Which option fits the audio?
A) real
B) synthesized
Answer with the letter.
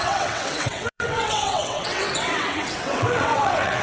B